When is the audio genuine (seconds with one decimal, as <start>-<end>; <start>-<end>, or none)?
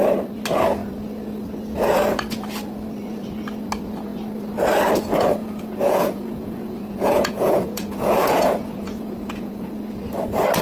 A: 0.0-5.4; 9.7-10.6